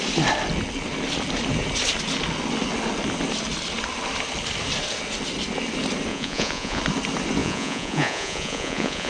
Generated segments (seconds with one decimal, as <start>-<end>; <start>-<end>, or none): 6.1-6.8; 7.4-9.1